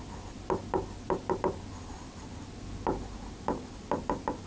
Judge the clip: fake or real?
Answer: real